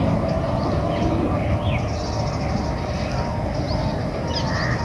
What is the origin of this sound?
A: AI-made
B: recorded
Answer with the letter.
B